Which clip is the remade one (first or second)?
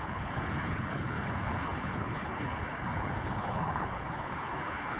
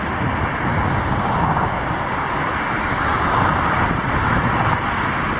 first